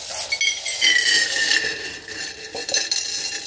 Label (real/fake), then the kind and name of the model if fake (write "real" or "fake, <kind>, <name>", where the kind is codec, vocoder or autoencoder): real